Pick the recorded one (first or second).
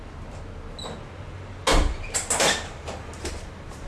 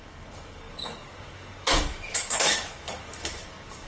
first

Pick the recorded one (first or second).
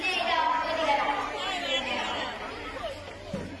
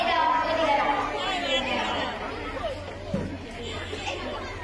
second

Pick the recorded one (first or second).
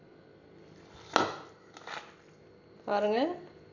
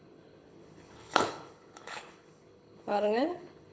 first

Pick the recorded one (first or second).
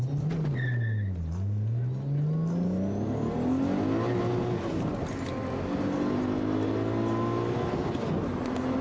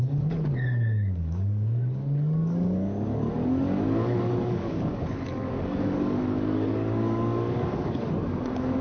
first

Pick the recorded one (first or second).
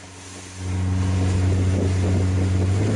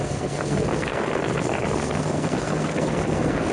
first